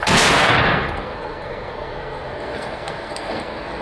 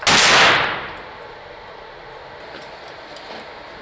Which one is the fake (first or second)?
first